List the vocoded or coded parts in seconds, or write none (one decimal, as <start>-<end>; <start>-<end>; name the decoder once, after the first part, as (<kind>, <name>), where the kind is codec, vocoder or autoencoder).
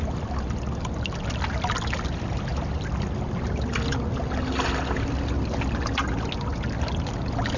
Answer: none